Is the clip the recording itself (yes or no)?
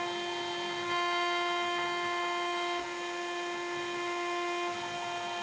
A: yes